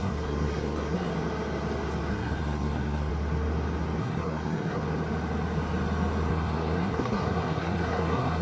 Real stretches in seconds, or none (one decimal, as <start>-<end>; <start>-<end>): 1.1-2.1; 3.1-4.0; 4.8-6.3

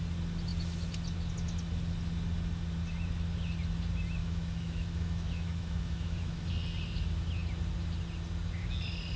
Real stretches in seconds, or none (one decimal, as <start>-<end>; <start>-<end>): 0.0-4.2; 6.5-9.2